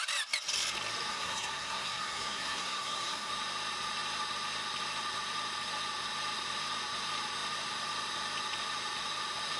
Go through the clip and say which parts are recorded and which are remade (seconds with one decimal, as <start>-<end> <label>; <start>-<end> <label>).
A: 0.0-1.1 recorded; 1.1-3.3 remade; 3.3-9.6 recorded